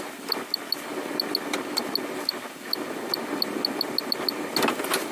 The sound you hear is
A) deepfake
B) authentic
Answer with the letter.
B